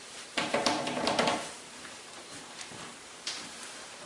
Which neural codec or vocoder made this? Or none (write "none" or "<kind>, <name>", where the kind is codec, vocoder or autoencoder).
vocoder, BigVGAN v2